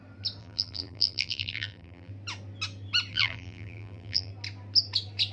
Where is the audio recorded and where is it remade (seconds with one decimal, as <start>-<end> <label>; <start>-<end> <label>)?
0.0-0.4 recorded; 0.4-2.1 remade; 2.1-3.1 recorded; 3.1-4.3 remade; 4.3-5.3 recorded